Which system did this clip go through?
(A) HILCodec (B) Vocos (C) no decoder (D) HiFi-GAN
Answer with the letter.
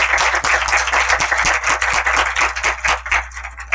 C